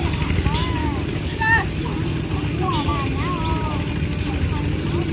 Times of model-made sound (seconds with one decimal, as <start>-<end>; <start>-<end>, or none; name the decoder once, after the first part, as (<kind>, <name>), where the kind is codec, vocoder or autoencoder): 0.8-1.7 (codec, DAC)

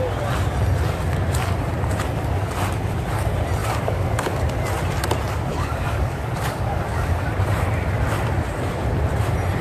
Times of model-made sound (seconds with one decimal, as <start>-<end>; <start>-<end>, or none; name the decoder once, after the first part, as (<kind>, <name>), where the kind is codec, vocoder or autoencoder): 3.6-4.4 (codec, DAC); 5.5-7.3

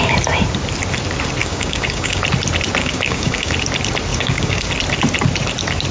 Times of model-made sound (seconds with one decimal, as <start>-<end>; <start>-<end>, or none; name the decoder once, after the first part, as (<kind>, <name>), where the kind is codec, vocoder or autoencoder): 1.4-2.2 (codec, DAC); 2.8-3.5; 4.1-4.7

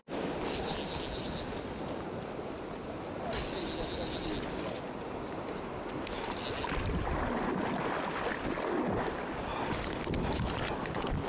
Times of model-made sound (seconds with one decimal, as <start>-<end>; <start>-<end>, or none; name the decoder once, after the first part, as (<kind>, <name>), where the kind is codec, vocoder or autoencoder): none

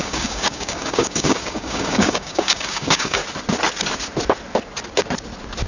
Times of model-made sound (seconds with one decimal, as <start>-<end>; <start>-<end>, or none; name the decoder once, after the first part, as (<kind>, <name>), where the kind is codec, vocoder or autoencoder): 0.0-3.2 (codec, DAC)